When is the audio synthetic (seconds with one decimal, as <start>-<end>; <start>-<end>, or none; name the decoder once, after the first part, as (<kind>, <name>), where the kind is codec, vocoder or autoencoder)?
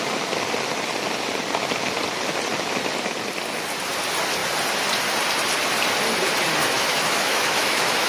6.6-8.1 (autoencoder, DAC-VAE)